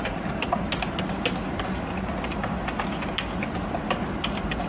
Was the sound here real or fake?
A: real